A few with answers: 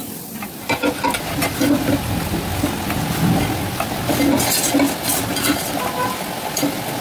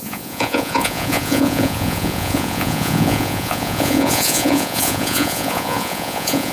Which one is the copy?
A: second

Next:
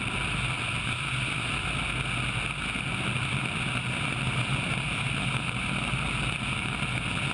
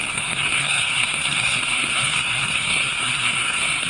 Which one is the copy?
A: second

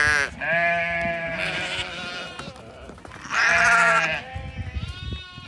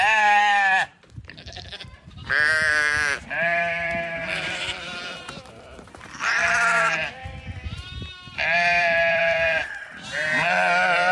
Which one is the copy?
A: second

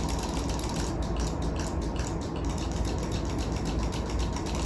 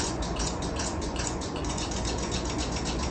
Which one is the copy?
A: second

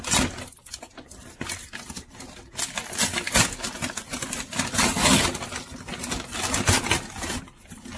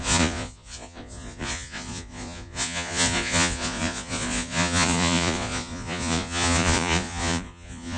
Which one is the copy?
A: second